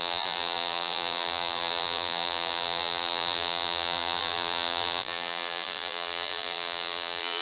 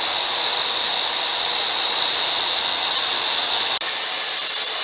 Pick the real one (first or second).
second